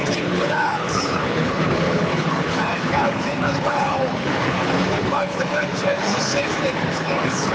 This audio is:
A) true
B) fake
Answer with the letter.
B